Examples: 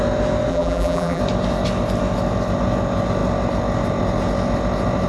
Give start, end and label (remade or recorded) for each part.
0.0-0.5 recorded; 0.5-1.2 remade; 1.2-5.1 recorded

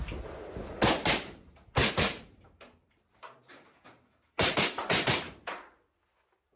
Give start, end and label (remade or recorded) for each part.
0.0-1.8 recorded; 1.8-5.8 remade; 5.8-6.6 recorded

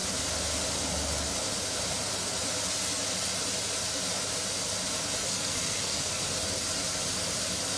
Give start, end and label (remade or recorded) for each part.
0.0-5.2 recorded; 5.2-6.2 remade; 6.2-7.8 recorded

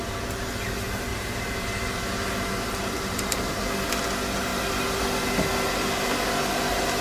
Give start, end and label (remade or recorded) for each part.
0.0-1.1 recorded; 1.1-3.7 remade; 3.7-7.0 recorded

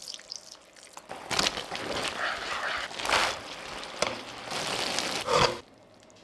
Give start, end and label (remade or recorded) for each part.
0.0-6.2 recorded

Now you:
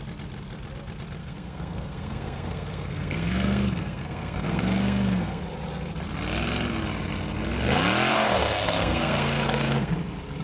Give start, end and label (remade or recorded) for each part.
0.0-1.2 recorded; 1.2-5.4 remade; 5.4-8.1 recorded; 8.1-9.9 remade; 9.9-10.4 recorded

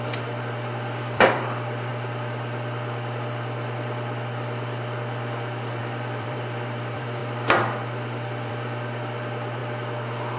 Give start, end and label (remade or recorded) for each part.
0.0-1.9 remade; 1.9-5.8 recorded; 5.8-7.2 remade; 7.2-8.5 recorded; 8.5-9.6 remade; 9.6-10.4 recorded